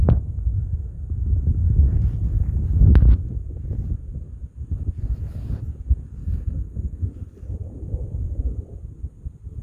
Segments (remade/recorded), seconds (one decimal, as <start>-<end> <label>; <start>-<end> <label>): 0.0-6.2 recorded; 6.2-7.0 remade; 7.0-9.6 recorded